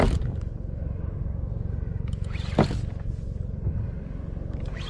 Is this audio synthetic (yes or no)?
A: no